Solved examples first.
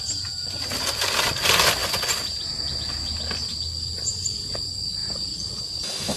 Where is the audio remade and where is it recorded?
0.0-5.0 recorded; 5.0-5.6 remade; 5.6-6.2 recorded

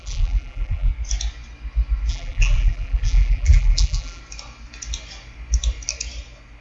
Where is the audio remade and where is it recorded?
0.0-0.9 remade; 0.9-2.1 recorded; 2.1-4.2 remade; 4.2-6.6 recorded